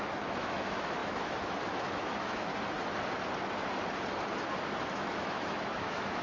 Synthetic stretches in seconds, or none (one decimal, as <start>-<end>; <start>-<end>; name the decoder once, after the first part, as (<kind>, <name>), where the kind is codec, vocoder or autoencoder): 0.0-2.5 (autoencoder, DAC-VAE); 4.9-6.2